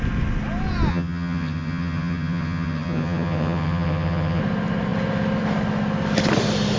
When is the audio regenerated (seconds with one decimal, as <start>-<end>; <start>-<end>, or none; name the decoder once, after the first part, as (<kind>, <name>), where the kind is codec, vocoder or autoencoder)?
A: 0.9-4.4 (vocoder, HiFi-GAN)